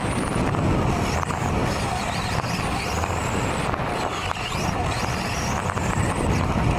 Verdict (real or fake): real